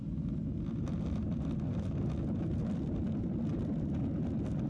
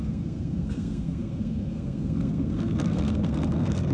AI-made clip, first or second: second